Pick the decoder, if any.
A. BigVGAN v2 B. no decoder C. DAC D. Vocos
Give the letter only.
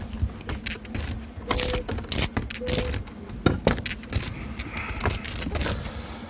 B